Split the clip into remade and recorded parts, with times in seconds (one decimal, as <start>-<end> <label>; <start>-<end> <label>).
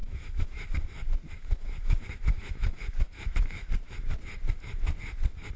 0.0-0.7 remade; 0.7-1.4 recorded; 1.4-3.7 remade; 3.7-5.6 recorded